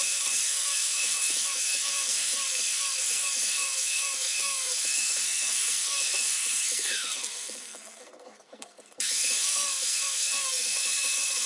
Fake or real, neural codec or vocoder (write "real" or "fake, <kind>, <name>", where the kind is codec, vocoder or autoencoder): fake, codec, SNAC